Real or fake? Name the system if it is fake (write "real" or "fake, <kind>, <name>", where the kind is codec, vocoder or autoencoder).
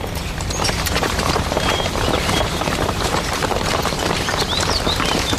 fake, vocoder, BigVGAN v2